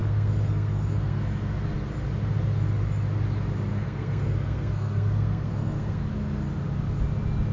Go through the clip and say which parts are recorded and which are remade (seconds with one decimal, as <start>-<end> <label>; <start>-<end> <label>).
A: 0.0-1.2 remade; 1.2-3.7 recorded; 3.7-6.0 remade; 6.0-7.5 recorded